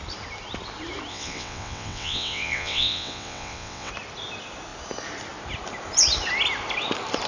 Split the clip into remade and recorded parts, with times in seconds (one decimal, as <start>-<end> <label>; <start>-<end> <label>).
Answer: 0.0-1.1 recorded; 1.1-3.9 remade; 3.9-7.3 recorded